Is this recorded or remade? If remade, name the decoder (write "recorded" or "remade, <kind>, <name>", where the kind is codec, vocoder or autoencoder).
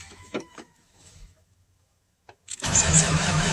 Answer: remade, autoencoder, DAC-VAE